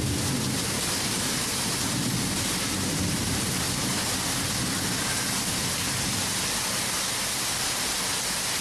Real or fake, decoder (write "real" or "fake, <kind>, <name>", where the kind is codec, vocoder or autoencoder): real